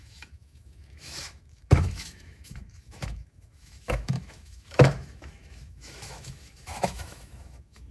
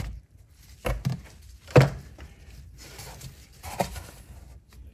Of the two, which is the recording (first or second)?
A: second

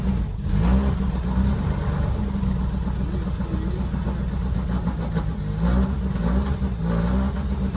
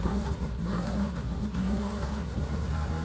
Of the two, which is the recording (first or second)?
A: first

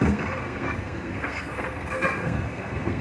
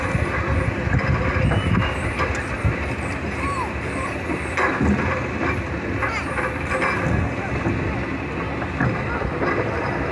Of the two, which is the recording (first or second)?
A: second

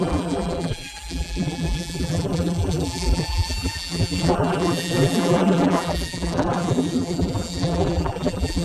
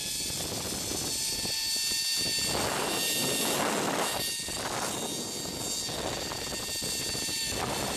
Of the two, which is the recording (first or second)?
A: second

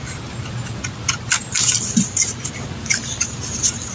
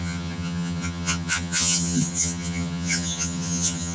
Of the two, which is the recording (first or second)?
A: first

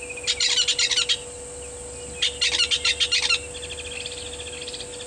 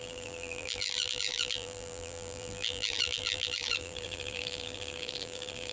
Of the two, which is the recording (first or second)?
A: first